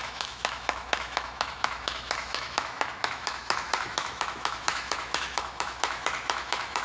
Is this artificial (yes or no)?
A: yes